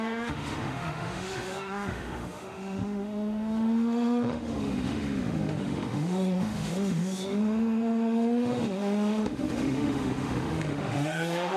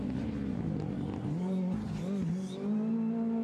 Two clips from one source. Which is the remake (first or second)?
first